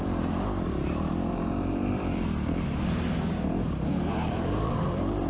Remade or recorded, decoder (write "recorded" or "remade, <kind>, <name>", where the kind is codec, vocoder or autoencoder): remade, vocoder, BigVGAN v2